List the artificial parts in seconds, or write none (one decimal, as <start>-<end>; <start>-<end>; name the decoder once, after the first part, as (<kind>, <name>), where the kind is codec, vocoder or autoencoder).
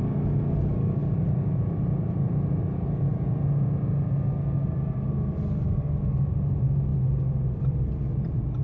1.0-3.1 (vocoder, BigVGAN v2); 6.9-8.6